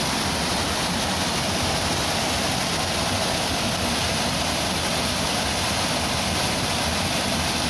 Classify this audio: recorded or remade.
recorded